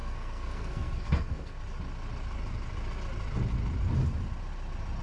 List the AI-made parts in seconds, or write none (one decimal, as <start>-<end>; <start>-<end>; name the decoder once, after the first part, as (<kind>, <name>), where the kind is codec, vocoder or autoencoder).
0.0-1.6 (codec, SNAC)